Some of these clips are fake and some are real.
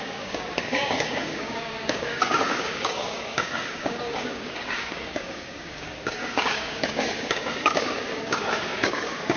fake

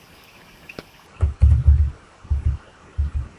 fake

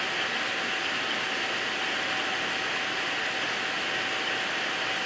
real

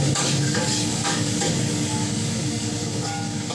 fake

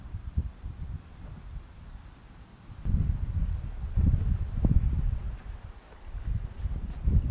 real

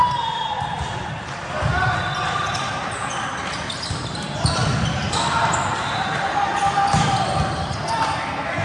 fake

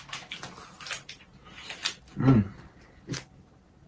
real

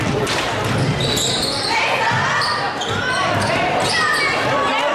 real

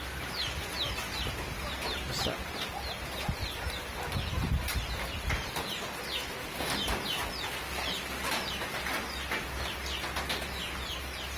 real